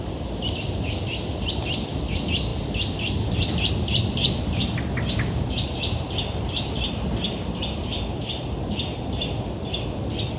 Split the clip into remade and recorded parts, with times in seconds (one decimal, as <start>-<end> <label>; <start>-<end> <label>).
0.0-10.4 recorded